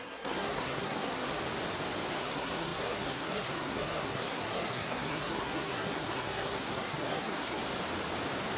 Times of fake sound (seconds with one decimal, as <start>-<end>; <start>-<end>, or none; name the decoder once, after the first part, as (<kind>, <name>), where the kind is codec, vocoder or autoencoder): 0.0-1.4 (codec, SNAC); 2.1-7.6